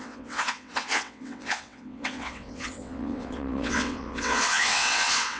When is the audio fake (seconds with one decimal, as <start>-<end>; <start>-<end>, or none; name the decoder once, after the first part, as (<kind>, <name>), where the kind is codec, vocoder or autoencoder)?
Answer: 0.0-5.4 (vocoder, WaveNeXt)